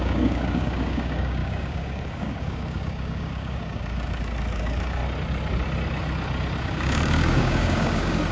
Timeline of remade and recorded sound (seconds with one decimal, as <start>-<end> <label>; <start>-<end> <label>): 0.0-5.0 remade; 5.0-6.6 recorded; 6.6-8.3 remade